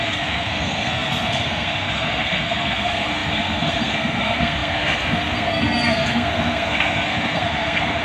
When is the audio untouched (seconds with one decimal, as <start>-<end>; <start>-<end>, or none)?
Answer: none